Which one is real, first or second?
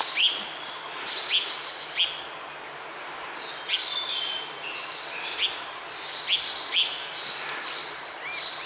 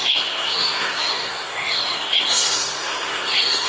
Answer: first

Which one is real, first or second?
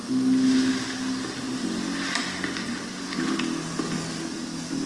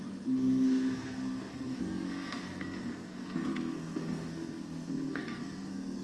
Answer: first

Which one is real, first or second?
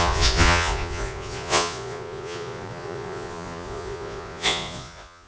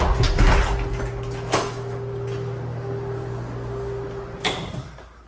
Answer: second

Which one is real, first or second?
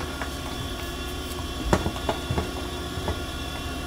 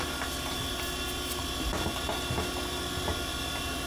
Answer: second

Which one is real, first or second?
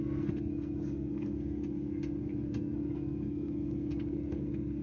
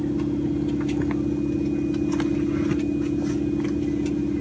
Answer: second